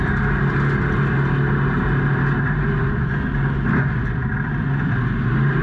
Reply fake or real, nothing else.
real